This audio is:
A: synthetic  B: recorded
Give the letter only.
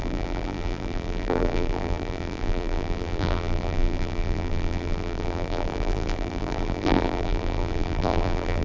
A